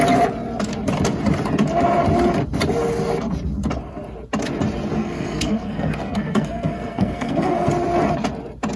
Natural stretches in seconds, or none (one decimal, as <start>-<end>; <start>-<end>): 0.0-5.0; 7.7-8.8